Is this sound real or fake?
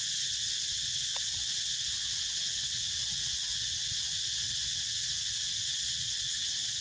fake